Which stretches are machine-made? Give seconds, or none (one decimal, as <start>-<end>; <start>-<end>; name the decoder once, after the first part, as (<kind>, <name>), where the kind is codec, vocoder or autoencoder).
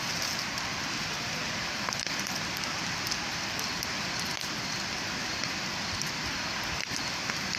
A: 1.4-5.3 (vocoder, BigVGAN v2)